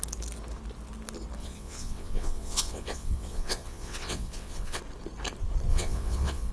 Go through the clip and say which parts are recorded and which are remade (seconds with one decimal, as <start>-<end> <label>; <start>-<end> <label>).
0.0-1.4 recorded; 1.4-4.8 remade; 4.8-5.7 recorded; 5.7-6.5 remade